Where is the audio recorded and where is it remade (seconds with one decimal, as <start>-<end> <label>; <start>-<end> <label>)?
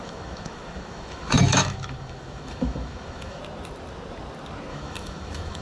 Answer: 0.0-3.4 remade; 3.4-4.7 recorded; 4.7-5.6 remade